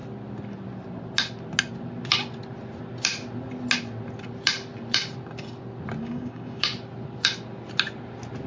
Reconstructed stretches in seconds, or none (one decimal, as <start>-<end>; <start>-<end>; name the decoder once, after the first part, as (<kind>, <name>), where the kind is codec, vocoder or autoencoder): 6.0-6.6 (codec, DAC)